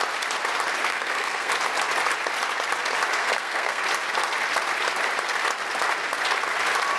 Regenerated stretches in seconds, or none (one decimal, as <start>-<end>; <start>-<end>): 0.9-1.5; 3.2-3.8